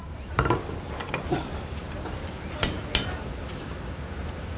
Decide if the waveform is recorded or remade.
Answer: recorded